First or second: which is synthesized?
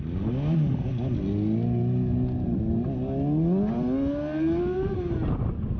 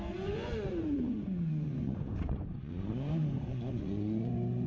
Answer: second